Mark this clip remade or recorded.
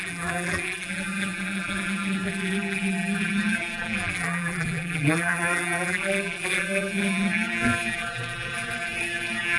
remade